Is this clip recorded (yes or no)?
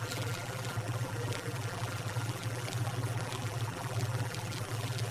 no